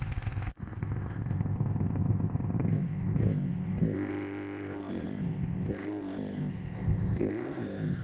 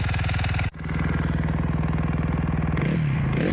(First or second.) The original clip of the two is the second